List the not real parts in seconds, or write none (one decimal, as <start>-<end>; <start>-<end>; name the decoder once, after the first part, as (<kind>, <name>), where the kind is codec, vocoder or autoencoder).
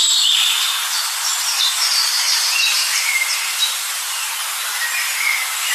0.9-4.3 (vocoder, BigVGAN v2)